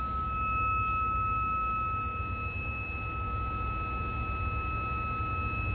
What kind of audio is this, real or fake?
real